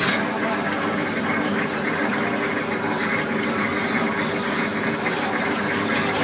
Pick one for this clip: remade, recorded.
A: recorded